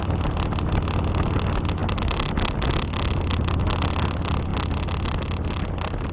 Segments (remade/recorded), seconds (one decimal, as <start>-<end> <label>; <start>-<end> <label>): 0.0-6.1 recorded